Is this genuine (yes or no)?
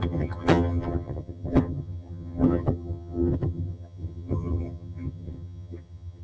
no